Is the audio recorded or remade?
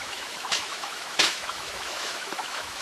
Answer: remade